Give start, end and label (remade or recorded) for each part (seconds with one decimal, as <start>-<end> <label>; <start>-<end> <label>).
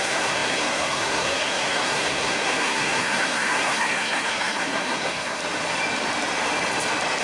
0.0-5.4 remade; 5.4-7.2 recorded